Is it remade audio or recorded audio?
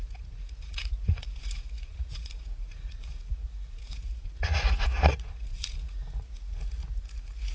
remade